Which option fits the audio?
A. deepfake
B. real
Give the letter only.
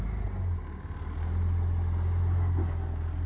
B